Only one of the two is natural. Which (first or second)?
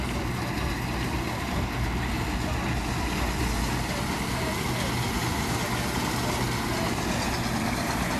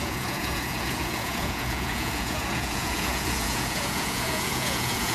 first